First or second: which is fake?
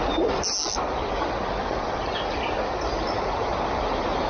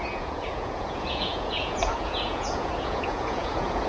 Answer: second